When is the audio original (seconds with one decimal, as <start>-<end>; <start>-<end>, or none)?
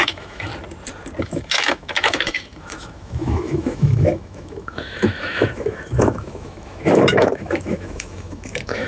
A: 0.5-1.2